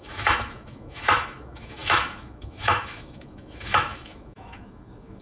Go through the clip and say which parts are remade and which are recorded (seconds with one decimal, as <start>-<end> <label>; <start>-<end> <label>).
0.0-5.2 remade